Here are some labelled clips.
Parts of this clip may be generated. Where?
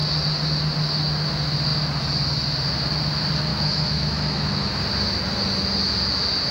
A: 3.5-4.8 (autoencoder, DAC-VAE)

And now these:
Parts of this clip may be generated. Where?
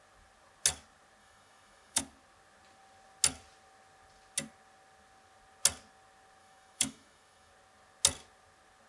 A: 1.2-2.0 (autoencoder, DAC-VAE); 6.4-7.5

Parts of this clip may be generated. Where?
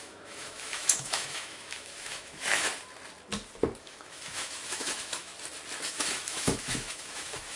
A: 0.0-2.7 (autoencoder, DAC-VAE); 3.8-5.3; 5.9-7.6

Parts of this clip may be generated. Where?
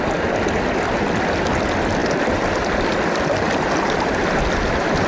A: none